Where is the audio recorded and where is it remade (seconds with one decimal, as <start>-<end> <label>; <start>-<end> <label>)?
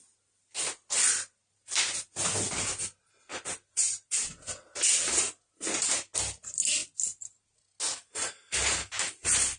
0.0-9.6 recorded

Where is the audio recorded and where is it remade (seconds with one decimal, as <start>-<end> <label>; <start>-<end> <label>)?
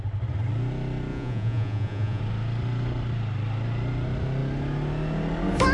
0.0-1.1 recorded; 1.1-2.2 remade; 2.2-5.7 recorded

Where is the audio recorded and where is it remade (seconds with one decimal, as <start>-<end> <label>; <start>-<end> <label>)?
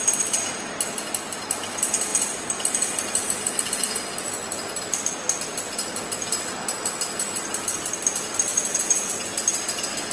0.0-8.5 recorded; 8.5-9.1 remade; 9.1-10.1 recorded